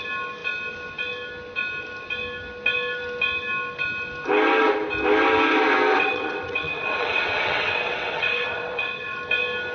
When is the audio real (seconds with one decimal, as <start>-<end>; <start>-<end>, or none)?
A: 0.0-5.9; 9.2-9.7